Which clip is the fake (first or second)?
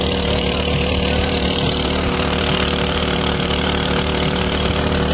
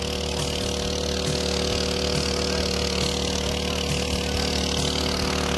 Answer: first